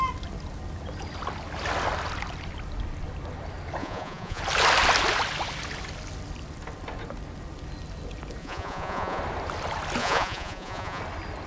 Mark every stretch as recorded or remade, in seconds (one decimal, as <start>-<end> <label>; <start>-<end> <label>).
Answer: 0.0-3.8 recorded; 3.8-4.4 remade; 4.4-8.4 recorded; 8.4-9.2 remade; 9.2-10.0 recorded; 10.0-11.0 remade; 11.0-11.5 recorded